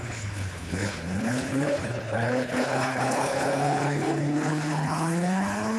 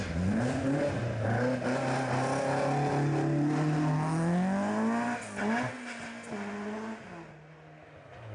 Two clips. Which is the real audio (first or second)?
second